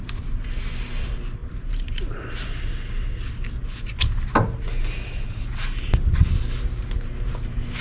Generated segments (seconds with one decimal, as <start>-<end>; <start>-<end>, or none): 1.4-2.2